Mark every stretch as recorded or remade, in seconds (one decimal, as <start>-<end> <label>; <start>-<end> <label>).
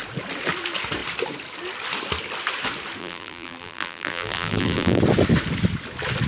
0.0-3.0 recorded; 3.0-5.0 remade; 5.0-6.3 recorded